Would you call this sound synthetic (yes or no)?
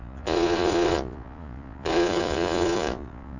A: yes